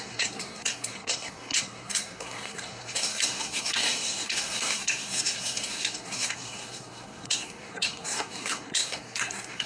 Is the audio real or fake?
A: fake